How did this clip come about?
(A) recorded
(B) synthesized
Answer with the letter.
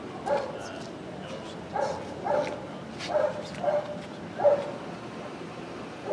A